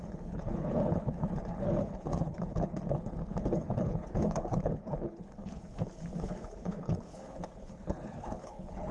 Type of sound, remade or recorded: remade